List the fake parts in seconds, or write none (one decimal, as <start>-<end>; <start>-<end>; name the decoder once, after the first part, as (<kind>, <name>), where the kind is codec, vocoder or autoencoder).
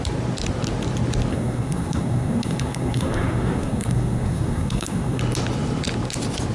1.3-5.2 (codec, SNAC)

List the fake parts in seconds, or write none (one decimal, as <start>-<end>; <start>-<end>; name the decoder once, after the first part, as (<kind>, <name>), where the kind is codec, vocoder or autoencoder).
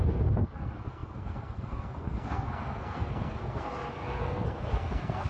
0.0-5.3 (codec, SNAC)